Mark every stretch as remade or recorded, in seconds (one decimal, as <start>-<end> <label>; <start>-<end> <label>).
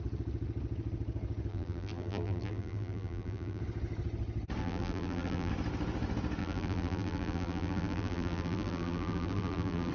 0.0-1.5 recorded; 1.5-3.6 remade; 3.6-4.6 recorded; 4.6-5.5 remade; 5.5-6.4 recorded; 6.4-9.9 remade